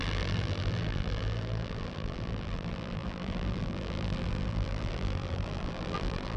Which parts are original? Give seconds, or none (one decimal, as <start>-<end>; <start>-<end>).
none

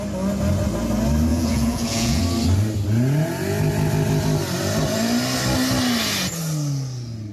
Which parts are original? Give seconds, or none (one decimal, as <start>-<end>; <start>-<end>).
0.0-1.3; 2.2-7.3

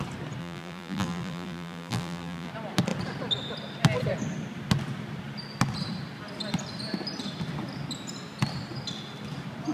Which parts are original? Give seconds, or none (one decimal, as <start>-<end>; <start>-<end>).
0.0-0.4; 2.5-9.7

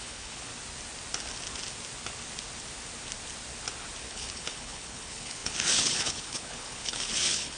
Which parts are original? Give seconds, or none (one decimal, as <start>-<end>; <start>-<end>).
0.5-4.0

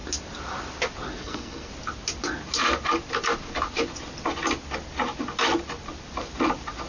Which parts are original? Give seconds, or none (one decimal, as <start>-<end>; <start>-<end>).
0.0-1.2; 1.7-6.9

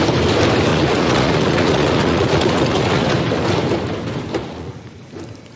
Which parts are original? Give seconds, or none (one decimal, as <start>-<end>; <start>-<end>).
0.0-0.7; 3.2-4.4; 5.0-5.6

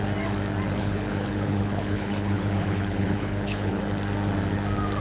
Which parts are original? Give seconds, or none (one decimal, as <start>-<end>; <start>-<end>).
0.0-0.8; 3.8-5.0